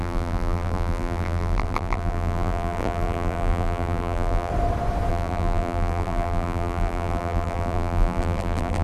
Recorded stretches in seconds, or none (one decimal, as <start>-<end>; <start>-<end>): 4.5-5.1